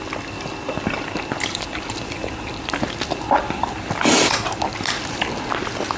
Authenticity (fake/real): real